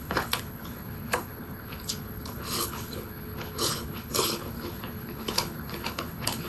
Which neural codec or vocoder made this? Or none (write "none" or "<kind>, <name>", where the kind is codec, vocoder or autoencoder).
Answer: codec, HILCodec